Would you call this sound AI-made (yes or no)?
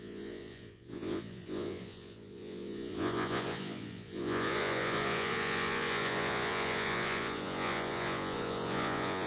yes